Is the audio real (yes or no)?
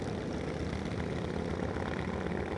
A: yes